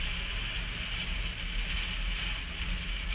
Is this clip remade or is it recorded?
recorded